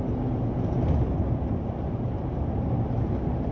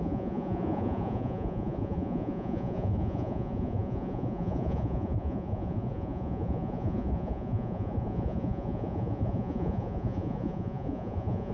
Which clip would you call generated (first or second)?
second